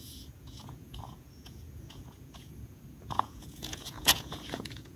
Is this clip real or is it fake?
fake